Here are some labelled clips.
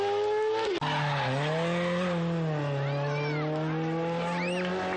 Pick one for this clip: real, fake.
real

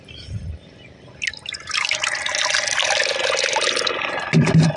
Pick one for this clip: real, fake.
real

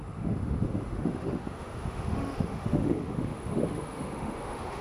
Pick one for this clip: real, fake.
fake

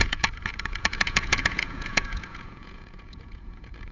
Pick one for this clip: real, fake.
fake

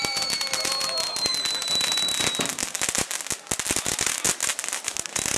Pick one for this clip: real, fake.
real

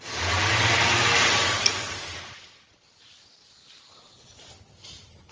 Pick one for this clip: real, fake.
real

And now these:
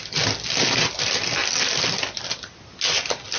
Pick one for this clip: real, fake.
real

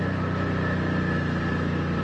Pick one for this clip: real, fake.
real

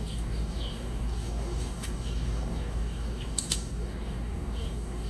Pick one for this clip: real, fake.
fake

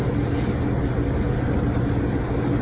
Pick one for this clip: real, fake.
real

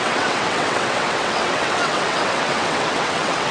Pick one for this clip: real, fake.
fake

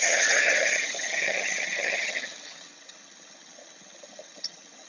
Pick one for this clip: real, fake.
fake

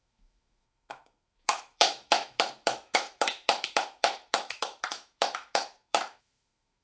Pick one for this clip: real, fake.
fake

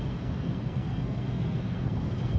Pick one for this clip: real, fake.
fake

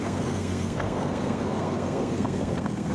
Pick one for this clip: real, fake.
fake